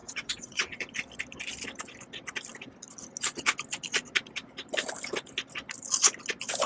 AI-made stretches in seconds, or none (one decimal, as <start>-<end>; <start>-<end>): 0.0-0.9